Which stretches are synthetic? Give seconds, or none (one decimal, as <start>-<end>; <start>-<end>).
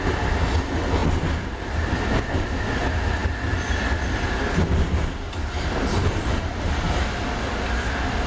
none